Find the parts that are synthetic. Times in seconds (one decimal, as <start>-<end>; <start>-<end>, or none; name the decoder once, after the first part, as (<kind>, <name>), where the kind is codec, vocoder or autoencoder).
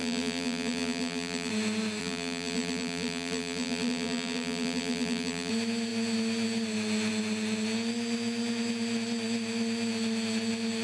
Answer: 0.0-1.5 (vocoder, BigVGAN v2); 2.0-5.5